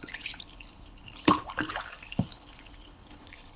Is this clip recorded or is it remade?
remade